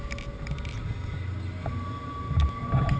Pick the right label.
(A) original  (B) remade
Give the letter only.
A